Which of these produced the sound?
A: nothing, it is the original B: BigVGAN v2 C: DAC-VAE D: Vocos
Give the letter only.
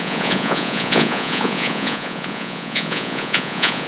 D